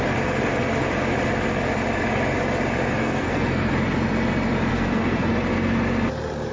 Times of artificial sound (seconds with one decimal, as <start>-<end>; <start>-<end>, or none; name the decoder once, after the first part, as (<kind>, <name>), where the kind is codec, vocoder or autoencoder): 3.0-3.7 (codec, SNAC); 4.7-5.3